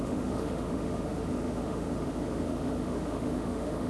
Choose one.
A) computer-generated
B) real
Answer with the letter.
A